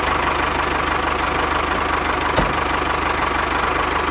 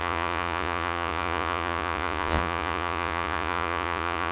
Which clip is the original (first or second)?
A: first